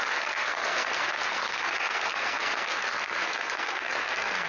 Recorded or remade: remade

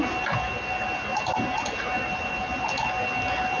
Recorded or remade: recorded